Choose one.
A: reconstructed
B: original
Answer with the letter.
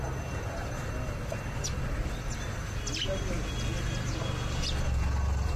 B